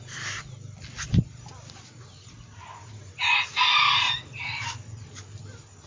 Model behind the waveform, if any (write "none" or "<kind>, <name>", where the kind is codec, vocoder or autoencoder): none